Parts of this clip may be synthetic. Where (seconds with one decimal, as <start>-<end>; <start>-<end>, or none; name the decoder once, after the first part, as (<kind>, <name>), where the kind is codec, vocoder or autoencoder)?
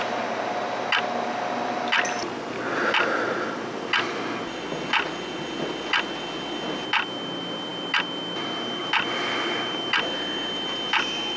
none